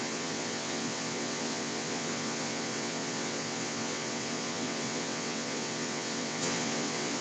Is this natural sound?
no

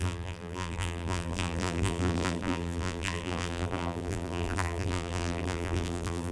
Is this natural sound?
no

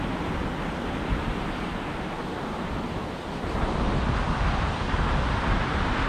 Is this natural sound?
yes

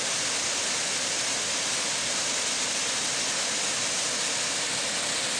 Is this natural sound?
yes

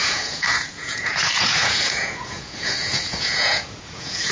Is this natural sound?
no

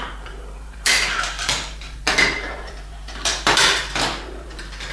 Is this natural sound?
no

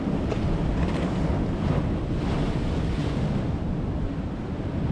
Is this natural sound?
yes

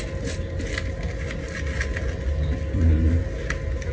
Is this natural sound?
yes